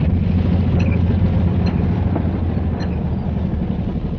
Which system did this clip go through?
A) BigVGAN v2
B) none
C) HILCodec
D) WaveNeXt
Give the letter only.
B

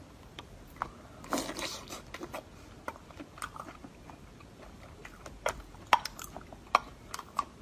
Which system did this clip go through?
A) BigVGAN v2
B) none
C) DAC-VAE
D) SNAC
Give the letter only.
B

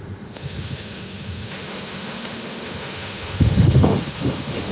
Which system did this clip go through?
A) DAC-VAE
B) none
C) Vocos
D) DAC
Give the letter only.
A